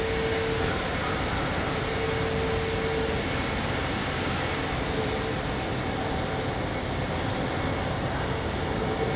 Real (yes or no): yes